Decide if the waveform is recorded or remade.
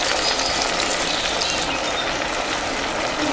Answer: recorded